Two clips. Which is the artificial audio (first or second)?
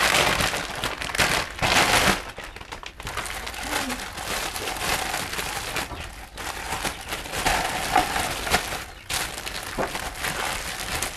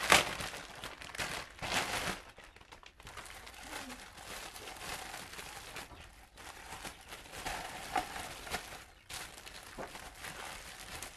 second